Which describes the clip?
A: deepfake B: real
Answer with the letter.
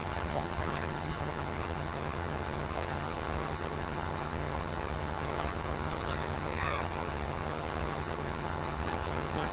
A